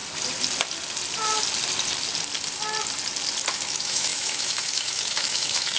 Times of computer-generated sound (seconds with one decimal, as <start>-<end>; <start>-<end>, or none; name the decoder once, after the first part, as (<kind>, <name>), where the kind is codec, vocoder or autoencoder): 3.5-5.8 (autoencoder, DAC-VAE)